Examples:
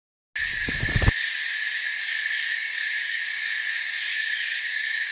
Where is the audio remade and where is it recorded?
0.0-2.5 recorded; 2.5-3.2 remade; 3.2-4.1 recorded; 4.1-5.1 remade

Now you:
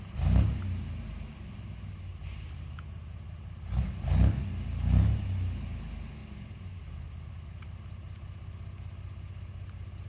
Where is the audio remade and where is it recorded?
0.0-10.1 recorded

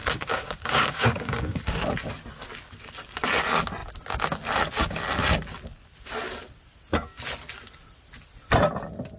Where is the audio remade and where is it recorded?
0.0-1.8 remade; 1.8-9.2 recorded

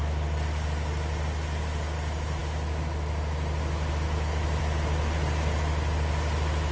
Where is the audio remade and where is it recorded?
0.0-6.7 recorded

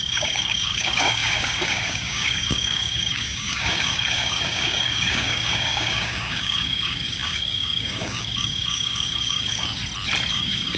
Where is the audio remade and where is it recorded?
0.0-9.8 remade; 9.8-10.3 recorded; 10.3-10.8 remade

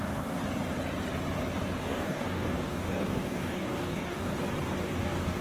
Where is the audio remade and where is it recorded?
0.0-0.4 remade; 0.4-1.8 recorded; 1.8-4.3 remade; 4.3-4.8 recorded; 4.8-5.4 remade

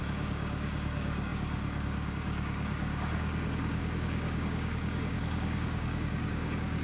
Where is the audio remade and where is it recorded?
0.0-6.8 remade